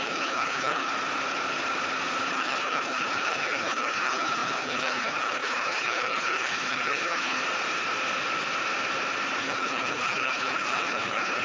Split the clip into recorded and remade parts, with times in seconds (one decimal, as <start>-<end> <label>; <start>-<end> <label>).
0.0-0.9 remade; 0.9-2.3 recorded; 2.3-7.4 remade; 7.4-9.4 recorded; 9.4-11.4 remade